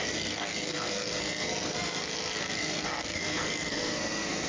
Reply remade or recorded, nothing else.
remade